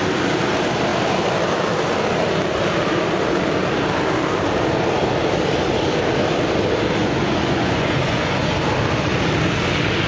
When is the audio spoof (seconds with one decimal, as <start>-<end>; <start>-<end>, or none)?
7.0-8.5